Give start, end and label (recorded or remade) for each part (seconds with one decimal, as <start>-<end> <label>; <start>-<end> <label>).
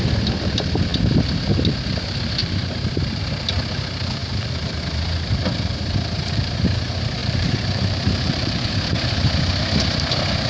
0.0-2.4 recorded; 2.4-3.2 remade; 3.2-7.2 recorded; 7.2-8.7 remade; 8.7-10.5 recorded